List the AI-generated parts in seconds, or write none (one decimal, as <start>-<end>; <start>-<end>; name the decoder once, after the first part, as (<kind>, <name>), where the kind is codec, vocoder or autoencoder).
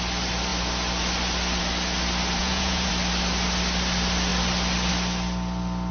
2.4-2.9 (vocoder, Vocos)